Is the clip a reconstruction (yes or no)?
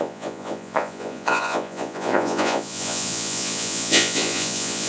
yes